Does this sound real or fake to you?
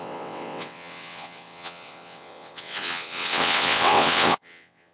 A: fake